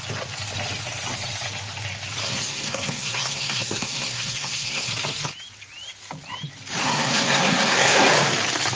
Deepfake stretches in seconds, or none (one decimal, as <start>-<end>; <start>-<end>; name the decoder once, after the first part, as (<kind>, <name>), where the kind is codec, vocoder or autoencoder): 2.2-4.9 (codec, SNAC); 6.8-8.1